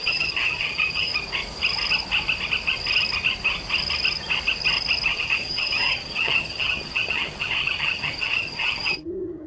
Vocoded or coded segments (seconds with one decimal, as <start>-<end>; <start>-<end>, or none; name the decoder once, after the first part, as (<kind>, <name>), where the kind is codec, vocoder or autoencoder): 0.0-1.1 (vocoder, HiFi-GAN); 5.1-9.5